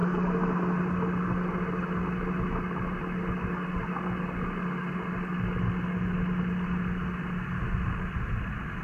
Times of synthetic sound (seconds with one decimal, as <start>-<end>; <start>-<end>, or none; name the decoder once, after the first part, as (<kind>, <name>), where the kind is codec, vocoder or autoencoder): none